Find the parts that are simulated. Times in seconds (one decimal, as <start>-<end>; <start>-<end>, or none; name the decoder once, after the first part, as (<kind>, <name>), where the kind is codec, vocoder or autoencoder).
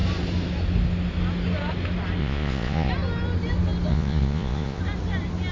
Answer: 2.2-2.9 (vocoder, Vocos); 3.9-4.8